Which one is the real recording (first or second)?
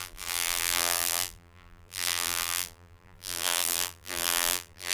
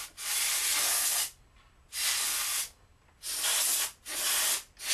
second